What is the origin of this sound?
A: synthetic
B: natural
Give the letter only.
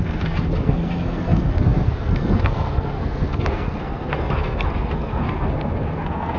A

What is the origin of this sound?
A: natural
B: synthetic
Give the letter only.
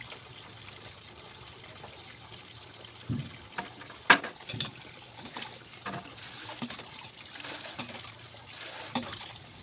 A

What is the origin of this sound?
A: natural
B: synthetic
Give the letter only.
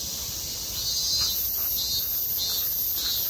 A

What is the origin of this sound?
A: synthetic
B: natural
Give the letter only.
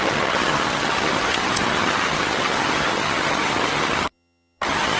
A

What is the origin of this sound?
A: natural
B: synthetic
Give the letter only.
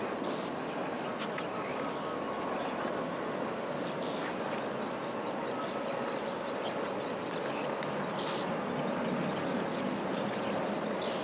A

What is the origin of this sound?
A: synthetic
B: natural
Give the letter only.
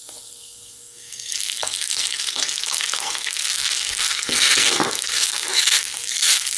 A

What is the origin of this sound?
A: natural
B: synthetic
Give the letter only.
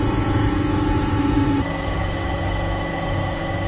A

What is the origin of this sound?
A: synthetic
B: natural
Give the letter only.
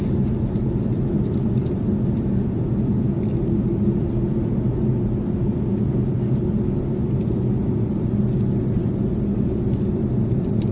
B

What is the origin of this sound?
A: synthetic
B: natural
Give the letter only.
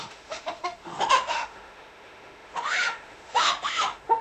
A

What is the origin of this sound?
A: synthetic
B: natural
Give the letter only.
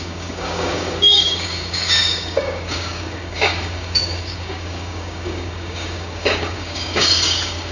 A